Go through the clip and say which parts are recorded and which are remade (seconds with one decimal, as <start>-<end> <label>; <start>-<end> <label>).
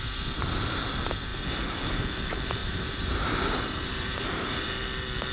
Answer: 0.0-2.6 recorded; 2.6-4.7 remade; 4.7-5.3 recorded